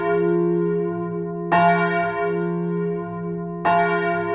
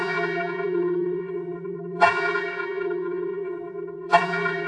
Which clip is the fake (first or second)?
second